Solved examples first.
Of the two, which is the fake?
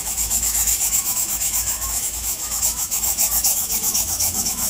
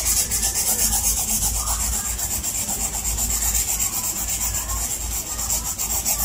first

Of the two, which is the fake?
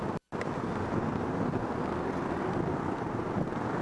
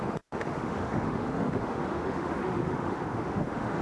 second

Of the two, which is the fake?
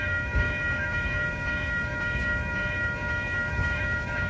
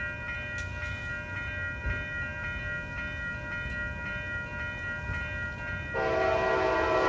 first